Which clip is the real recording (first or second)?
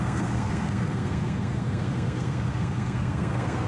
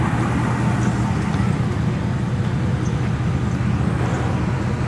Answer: second